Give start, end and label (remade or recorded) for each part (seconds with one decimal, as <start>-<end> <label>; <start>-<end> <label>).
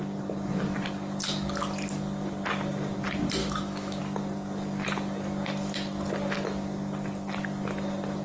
0.0-3.4 recorded; 3.4-4.0 remade; 4.0-8.2 recorded